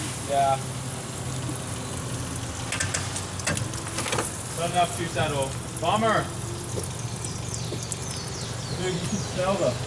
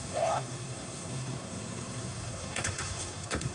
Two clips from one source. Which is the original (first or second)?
first